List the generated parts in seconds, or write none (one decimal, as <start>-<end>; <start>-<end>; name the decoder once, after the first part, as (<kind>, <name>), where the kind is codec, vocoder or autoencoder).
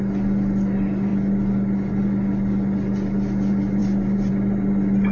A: none